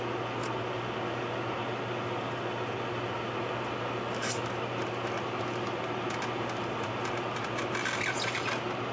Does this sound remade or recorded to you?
recorded